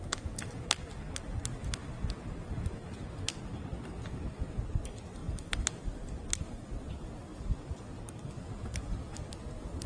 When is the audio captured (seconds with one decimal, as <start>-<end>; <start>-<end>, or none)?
0.0-1.8; 3.4-5.2; 6.4-8.8; 9.5-9.9